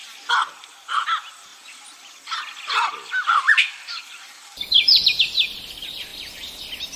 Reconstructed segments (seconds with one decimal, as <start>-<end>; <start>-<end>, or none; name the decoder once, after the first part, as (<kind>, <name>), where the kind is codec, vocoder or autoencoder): 1.5-5.2 (vocoder, BigVGAN v2)